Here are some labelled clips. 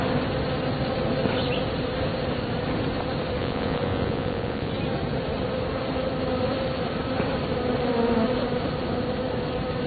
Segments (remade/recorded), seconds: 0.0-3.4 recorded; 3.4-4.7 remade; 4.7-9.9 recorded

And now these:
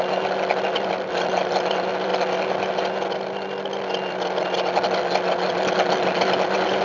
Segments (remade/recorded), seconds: 0.0-6.8 recorded

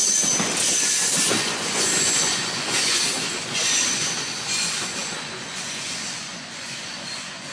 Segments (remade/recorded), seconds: 0.0-0.7 recorded; 0.7-7.5 remade

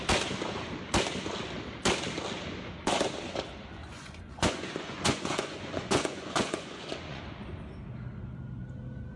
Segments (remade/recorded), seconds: 0.0-3.8 recorded; 3.8-7.2 remade; 7.2-9.2 recorded

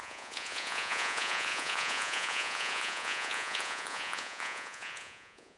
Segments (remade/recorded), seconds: 0.0-5.6 remade